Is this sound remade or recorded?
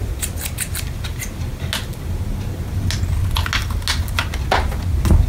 recorded